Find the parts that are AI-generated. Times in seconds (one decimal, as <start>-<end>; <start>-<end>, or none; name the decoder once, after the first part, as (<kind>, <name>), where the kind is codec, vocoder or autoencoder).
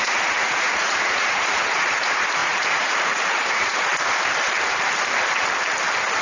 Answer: 0.0-3.9 (vocoder, Vocos)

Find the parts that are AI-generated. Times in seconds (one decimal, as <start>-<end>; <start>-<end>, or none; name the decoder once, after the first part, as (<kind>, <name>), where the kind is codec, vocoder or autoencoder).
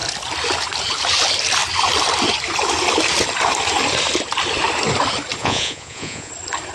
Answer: 5.4-6.3 (vocoder, Vocos)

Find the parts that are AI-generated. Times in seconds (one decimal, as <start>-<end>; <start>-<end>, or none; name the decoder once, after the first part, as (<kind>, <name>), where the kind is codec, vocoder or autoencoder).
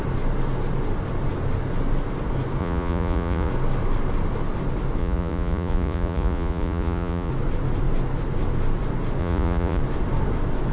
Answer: 2.6-3.5 (vocoder, Vocos); 5.0-7.3; 9.2-9.8